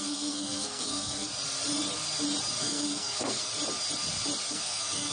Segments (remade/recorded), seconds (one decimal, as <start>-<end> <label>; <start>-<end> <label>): 0.0-1.3 remade; 1.3-2.6 recorded; 2.6-3.5 remade; 3.5-4.5 recorded; 4.5-5.1 remade